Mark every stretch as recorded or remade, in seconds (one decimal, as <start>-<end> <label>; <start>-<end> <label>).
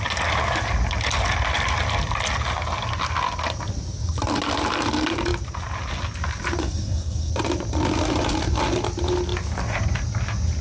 0.0-6.6 recorded; 6.6-7.3 remade; 7.3-10.6 recorded